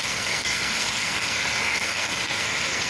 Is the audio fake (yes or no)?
yes